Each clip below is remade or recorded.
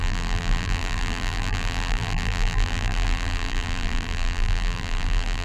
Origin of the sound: remade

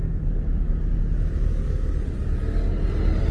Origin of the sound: recorded